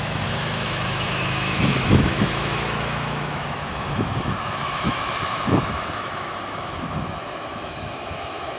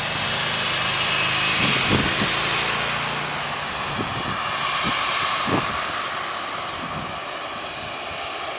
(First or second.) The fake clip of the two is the first